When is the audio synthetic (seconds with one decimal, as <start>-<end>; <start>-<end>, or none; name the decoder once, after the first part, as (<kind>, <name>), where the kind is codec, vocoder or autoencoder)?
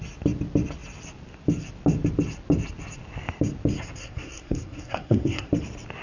4.0-5.5 (codec, SNAC)